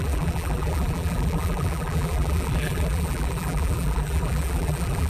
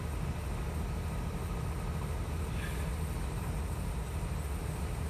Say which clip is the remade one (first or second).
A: first